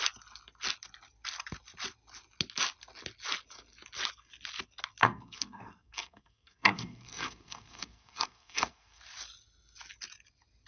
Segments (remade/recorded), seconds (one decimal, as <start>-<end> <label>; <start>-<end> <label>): 0.0-5.0 recorded; 5.0-9.0 remade; 9.0-10.7 recorded